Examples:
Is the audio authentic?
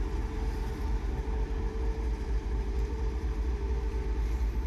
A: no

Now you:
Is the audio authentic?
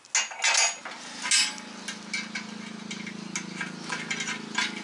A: yes